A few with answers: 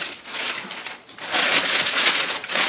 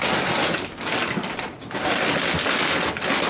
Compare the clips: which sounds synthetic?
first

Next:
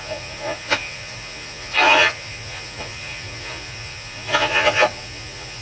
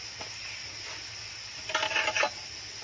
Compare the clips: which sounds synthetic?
first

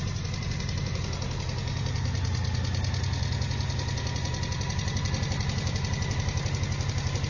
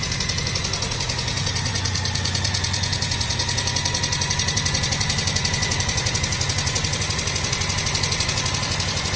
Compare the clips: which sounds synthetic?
second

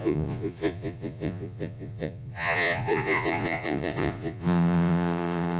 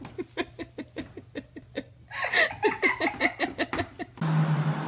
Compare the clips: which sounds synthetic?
first